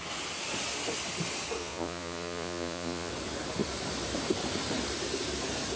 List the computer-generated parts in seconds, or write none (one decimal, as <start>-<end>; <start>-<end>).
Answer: 1.6-3.1